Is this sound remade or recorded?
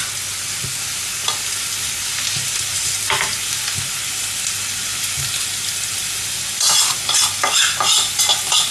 recorded